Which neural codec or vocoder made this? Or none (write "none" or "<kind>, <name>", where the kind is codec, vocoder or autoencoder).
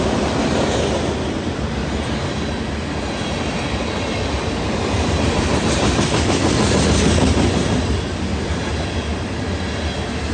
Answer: none